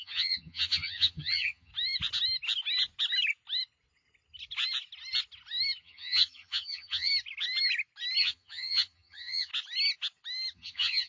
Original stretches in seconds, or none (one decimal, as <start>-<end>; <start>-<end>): 1.7-5.8; 7.1-8.2; 9.5-10.5